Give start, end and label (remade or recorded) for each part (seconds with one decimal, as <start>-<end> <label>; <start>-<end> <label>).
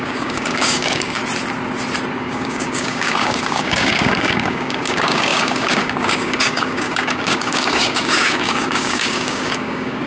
0.0-1.2 remade; 1.2-2.2 recorded; 2.2-10.1 remade